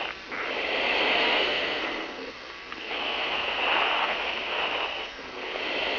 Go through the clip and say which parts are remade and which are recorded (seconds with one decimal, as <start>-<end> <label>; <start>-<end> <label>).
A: 0.0-1.1 recorded; 1.1-3.6 remade; 3.6-4.0 recorded; 4.0-4.6 remade; 4.6-5.0 recorded; 5.0-5.6 remade; 5.6-6.0 recorded